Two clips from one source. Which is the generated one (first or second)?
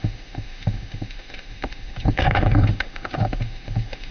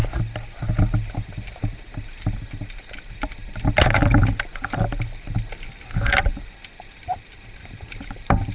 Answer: first